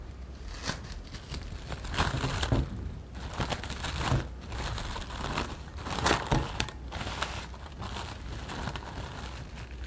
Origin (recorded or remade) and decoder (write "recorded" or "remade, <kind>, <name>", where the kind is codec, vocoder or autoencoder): recorded